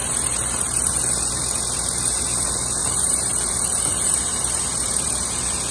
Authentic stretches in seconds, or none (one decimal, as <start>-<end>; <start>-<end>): 1.0-2.8; 5.3-5.7